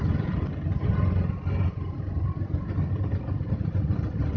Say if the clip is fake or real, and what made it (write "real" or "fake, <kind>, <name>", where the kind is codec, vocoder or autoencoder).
real